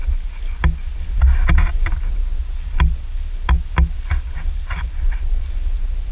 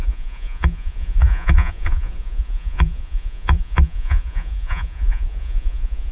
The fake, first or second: second